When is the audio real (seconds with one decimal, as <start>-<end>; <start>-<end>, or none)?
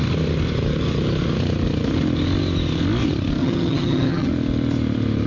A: 0.0-3.4; 4.3-5.3